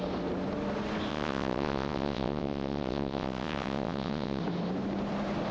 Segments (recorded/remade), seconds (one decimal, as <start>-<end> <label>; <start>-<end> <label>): 0.0-1.1 recorded; 1.1-4.4 remade; 4.4-5.5 recorded